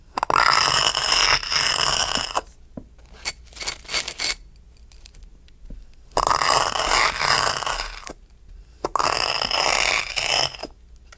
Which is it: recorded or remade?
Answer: recorded